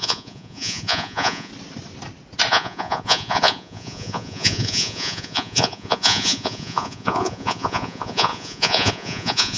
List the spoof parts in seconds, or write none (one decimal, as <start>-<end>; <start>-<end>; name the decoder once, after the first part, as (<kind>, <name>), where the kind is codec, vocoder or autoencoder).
0.0-1.5 (vocoder, Vocos); 2.5-9.6